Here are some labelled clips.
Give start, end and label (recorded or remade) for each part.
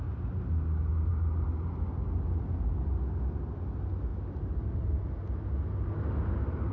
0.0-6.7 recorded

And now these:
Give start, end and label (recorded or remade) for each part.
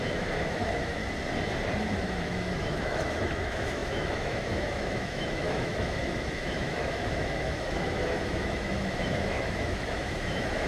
0.0-1.0 remade; 1.0-2.0 recorded; 2.0-10.7 remade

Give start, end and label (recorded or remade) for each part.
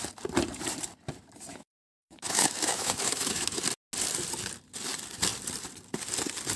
0.0-1.5 recorded; 1.5-3.6 remade; 3.6-6.6 recorded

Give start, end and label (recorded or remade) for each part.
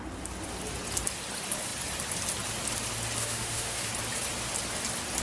0.0-3.2 recorded; 3.2-3.9 remade; 3.9-5.2 recorded